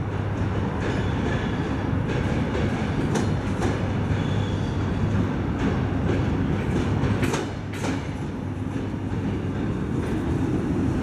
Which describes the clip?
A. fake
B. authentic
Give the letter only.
B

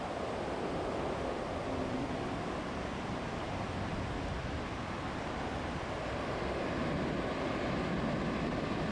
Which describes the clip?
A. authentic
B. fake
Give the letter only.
A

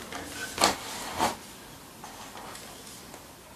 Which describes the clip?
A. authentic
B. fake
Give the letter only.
A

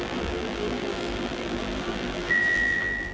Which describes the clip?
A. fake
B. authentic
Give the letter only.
A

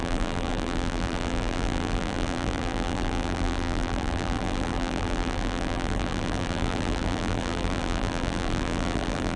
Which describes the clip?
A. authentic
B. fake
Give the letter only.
B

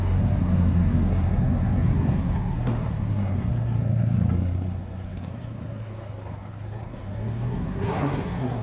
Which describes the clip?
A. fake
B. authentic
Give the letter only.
A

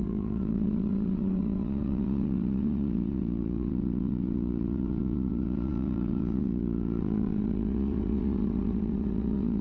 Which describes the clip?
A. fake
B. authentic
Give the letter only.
A